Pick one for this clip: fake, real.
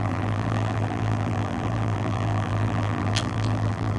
fake